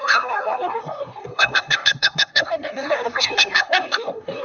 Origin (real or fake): fake